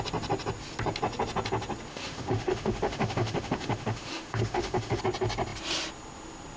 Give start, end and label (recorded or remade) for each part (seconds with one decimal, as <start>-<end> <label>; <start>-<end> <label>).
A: 0.0-1.9 recorded; 1.9-5.0 remade; 5.0-6.6 recorded